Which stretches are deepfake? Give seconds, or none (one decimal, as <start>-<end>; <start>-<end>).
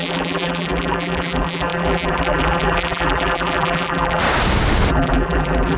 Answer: 0.0-4.2; 4.9-5.8